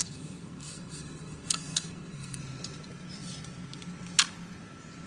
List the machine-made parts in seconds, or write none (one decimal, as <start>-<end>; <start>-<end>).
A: 0.0-2.4